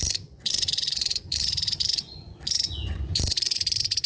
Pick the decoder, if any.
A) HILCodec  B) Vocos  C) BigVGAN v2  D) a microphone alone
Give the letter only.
B